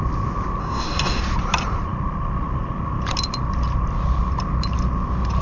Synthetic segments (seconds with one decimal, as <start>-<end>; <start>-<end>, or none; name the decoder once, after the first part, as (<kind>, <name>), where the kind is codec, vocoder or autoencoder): 0.6-1.2 (codec, DAC)

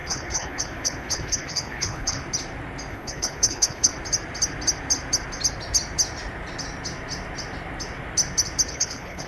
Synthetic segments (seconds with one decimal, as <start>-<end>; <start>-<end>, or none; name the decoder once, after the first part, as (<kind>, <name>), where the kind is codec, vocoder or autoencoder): 0.0-2.2 (codec, HILCodec); 2.9-3.9; 8.7-9.3

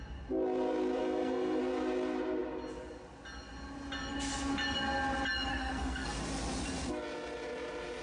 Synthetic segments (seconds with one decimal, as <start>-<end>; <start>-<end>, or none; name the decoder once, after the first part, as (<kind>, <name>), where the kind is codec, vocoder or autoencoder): 1.0-1.6 (codec, SNAC); 5.5-6.2

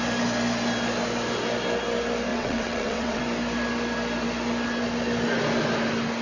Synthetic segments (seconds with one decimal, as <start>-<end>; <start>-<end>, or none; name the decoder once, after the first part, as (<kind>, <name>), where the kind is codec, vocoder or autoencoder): 2.3-3.2 (vocoder, WaveNeXt)

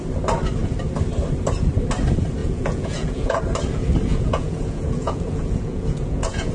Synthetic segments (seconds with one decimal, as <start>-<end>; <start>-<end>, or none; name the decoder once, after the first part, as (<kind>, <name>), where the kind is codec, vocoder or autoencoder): 2.4-3.4 (vocoder, Vocos); 4.1-6.5

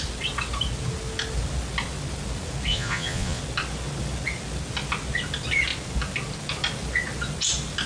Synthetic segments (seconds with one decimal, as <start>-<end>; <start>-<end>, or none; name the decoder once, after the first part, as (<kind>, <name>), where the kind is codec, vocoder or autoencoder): 2.7-3.4 (vocoder, Vocos)

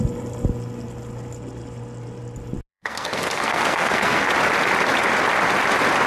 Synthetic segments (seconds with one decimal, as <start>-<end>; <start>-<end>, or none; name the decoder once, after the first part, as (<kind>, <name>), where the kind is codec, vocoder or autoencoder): 2.7-4.3 (codec, SNAC)

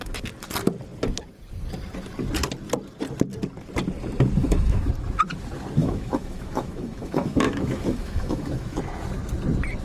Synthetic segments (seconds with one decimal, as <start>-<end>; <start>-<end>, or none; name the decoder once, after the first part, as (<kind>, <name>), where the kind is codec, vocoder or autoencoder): 4.4-4.9 (autoencoder, DAC-VAE); 5.8-8.8